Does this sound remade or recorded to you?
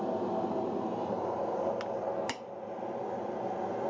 recorded